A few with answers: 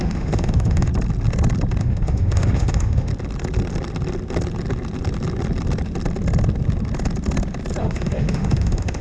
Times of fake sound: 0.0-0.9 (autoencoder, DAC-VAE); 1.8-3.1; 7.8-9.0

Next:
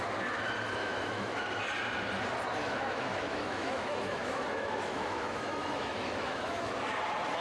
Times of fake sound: 0.8-1.4 (autoencoder, DAC-VAE); 2.6-6.9